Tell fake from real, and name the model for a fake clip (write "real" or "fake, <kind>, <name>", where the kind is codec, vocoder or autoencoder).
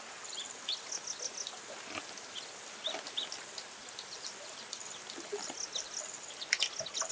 real